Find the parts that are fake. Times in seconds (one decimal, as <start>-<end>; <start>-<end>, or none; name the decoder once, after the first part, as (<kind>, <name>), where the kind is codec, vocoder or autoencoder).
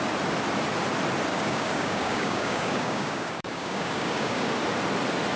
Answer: 1.3-4.5 (codec, DAC)